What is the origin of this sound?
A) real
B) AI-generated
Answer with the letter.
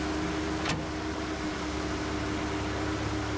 A